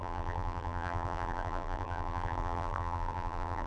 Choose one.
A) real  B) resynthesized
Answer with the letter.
B